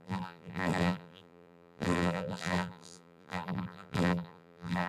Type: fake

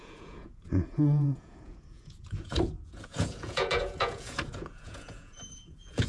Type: fake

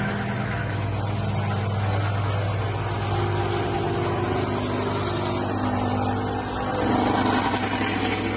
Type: real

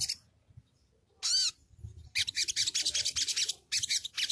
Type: real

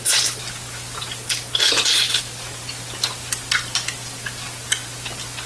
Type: real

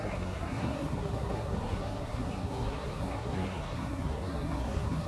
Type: fake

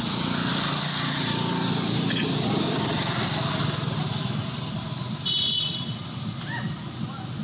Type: real